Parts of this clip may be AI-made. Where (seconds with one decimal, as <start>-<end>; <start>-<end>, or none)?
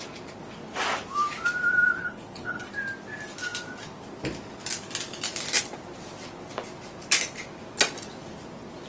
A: 2.0-2.7